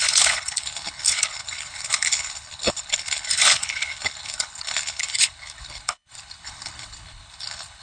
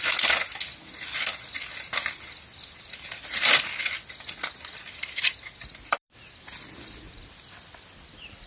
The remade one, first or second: first